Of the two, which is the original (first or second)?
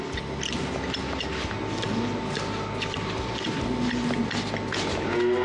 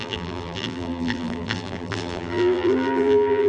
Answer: first